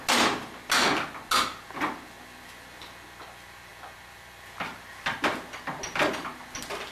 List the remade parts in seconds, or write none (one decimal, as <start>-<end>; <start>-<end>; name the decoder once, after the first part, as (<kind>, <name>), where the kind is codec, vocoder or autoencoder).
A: none